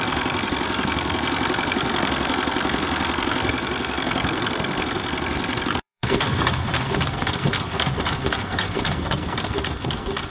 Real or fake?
fake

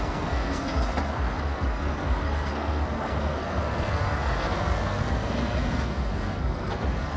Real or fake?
fake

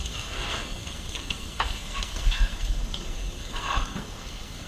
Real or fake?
fake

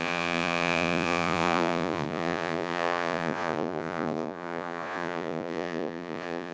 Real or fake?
fake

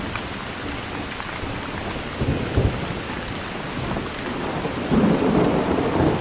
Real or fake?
real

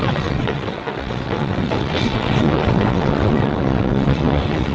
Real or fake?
fake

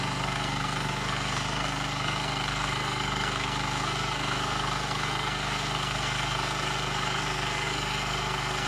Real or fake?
fake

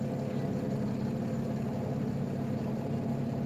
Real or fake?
real